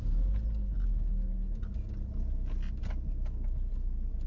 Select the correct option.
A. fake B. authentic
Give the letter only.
B